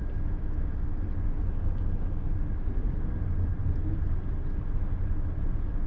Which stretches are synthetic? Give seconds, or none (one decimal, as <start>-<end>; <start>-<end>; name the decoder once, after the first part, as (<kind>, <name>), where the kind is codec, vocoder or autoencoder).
none